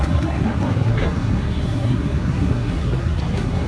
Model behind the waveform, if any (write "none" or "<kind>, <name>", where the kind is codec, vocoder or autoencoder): codec, SNAC